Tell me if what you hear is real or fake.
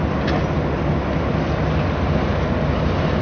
real